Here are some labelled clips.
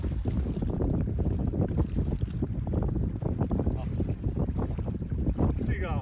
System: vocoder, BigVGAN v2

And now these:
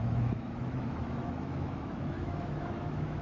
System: autoencoder, DAC-VAE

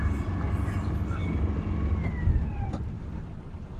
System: none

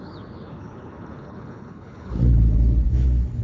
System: codec, HILCodec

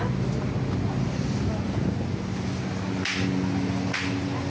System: none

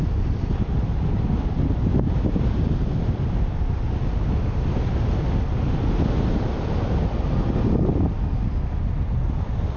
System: none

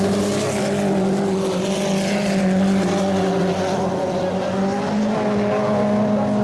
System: none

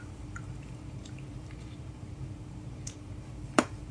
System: vocoder, BigVGAN v2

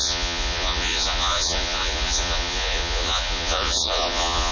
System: vocoder, Vocos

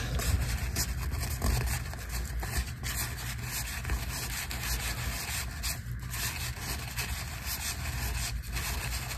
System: none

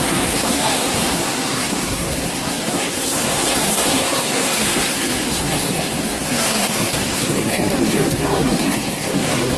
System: codec, SNAC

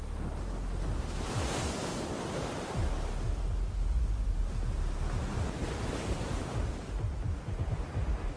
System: none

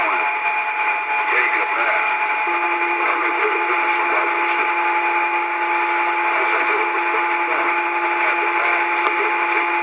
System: none